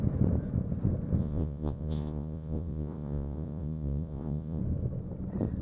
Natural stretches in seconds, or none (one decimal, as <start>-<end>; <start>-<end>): 0.0-1.2; 4.6-5.6